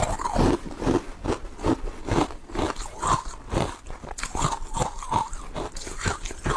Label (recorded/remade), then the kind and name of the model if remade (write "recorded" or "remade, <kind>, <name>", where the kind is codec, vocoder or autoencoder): recorded